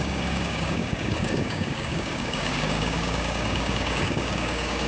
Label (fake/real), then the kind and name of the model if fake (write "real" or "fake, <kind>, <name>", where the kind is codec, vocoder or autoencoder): fake, codec, DAC